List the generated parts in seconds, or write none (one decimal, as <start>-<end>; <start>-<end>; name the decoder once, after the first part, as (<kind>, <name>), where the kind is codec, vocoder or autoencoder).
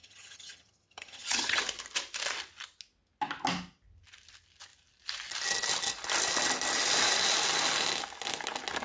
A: 0.0-1.6 (vocoder, HiFi-GAN)